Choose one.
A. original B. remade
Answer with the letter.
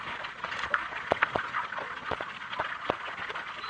B